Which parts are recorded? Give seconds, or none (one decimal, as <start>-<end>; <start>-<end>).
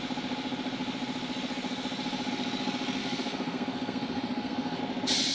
0.0-3.0; 4.8-5.3